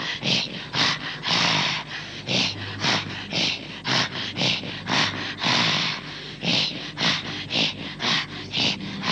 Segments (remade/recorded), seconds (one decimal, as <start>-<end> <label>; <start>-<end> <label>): 0.0-9.1 recorded